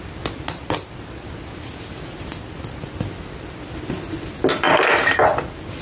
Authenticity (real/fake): real